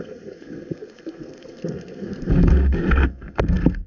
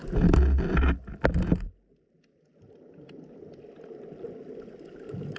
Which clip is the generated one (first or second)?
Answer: first